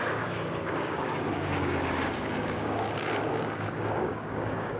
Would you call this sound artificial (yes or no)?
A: yes